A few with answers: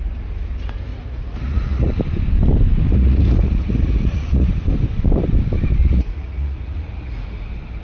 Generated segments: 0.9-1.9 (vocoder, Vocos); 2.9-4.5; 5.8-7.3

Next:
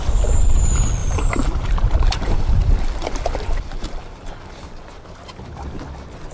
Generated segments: 1.0-4.5 (vocoder, BigVGAN v2)

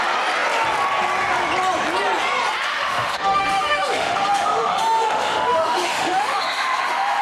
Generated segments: 2.7-7.2 (autoencoder, DAC-VAE)

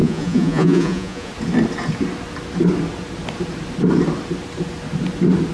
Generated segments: 0.0-1.3 (vocoder, Vocos)

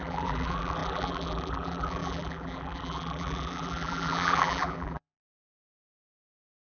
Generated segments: 0.0-6.6 (vocoder, BigVGAN v2)

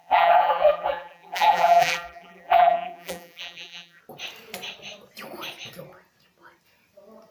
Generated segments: 0.0-4.0 (vocoder, BigVGAN v2)

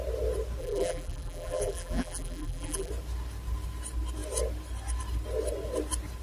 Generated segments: 0.6-2.9 (vocoder, BigVGAN v2)